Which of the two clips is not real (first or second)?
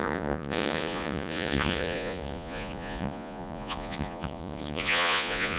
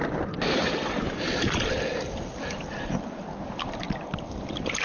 first